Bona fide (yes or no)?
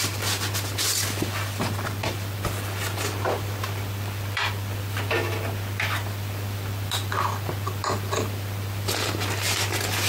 no